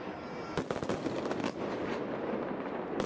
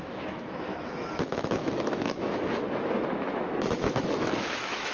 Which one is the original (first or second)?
first